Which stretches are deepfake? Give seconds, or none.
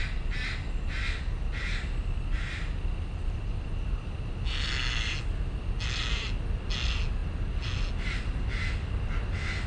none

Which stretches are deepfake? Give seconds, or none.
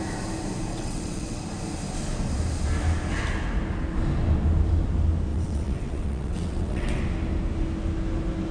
0.7-1.4; 5.3-7.0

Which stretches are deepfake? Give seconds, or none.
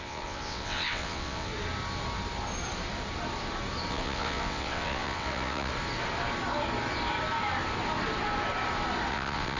0.0-1.5; 3.9-5.7; 9.1-9.6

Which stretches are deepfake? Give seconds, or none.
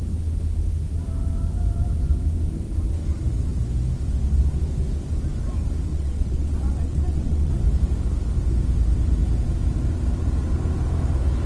5.9-7.5